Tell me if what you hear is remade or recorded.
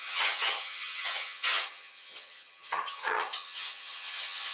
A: remade